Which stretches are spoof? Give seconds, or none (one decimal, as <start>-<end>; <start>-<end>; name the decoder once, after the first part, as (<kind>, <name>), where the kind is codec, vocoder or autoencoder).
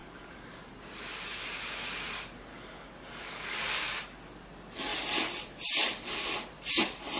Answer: 0.0-0.7 (codec, DAC); 2.5-3.9